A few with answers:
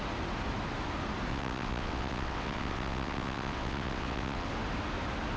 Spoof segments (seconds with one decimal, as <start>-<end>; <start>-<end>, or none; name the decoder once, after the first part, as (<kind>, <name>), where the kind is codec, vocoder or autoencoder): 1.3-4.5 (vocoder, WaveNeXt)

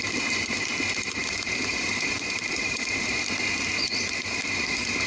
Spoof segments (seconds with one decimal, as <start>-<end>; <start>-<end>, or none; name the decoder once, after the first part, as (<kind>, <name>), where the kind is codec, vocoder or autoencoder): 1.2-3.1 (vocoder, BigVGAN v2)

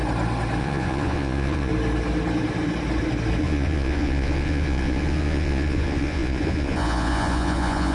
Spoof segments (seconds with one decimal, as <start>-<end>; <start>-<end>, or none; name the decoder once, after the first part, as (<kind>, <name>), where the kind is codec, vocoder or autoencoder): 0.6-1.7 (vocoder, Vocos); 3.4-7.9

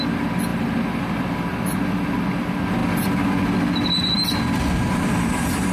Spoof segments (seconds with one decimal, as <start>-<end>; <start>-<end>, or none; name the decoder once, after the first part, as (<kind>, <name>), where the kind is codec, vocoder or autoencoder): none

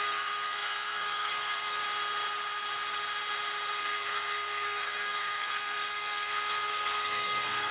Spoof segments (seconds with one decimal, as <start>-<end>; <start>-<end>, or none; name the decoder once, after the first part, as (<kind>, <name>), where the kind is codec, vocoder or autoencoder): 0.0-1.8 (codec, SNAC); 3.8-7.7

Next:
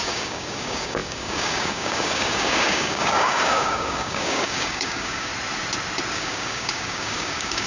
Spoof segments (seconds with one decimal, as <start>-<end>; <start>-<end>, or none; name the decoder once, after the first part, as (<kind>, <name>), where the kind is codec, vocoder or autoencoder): 0.0-5.3 (codec, DAC); 6.1-7.7

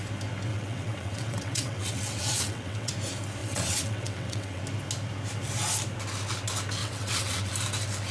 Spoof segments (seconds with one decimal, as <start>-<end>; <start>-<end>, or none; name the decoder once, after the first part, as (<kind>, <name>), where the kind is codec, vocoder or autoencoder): 0.5-2.9 (vocoder, WaveNeXt); 3.4-4.6; 6.8-7.5